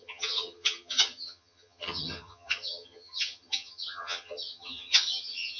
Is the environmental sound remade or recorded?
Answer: remade